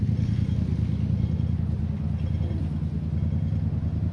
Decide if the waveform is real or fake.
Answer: real